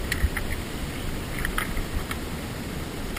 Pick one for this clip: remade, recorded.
recorded